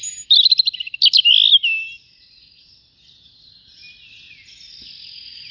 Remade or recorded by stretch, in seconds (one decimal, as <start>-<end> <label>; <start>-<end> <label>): 0.0-5.5 recorded